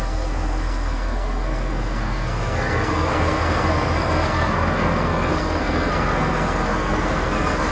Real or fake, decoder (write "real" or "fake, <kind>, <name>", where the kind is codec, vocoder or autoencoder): fake, codec, SNAC